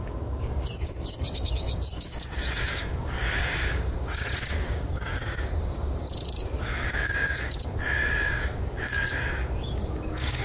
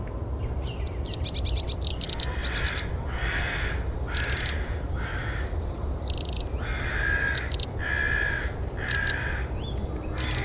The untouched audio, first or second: second